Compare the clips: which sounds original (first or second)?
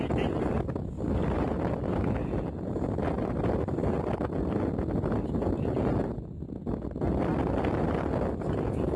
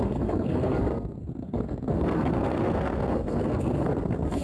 first